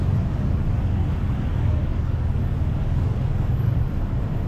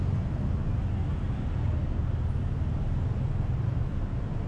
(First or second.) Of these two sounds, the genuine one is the second